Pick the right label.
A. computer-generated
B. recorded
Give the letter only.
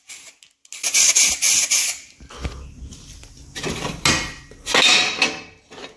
B